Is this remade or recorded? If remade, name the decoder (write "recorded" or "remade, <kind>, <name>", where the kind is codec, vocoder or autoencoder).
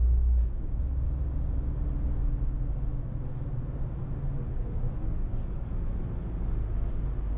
recorded